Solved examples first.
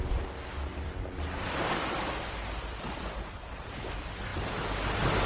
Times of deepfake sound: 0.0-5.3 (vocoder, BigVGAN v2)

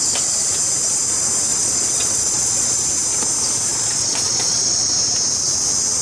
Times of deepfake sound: 1.5-2.8 (vocoder, Vocos); 3.7-4.9